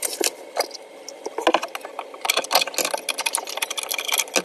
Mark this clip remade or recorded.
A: recorded